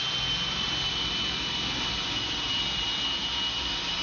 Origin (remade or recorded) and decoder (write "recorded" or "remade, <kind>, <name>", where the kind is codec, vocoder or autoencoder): recorded